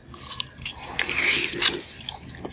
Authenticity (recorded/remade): recorded